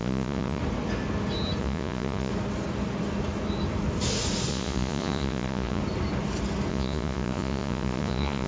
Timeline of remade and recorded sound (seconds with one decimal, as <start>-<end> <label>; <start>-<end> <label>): 0.0-0.6 remade; 0.6-1.6 recorded; 1.6-2.3 remade; 2.3-4.5 recorded; 4.5-5.8 remade; 5.8-6.7 recorded; 6.7-8.5 remade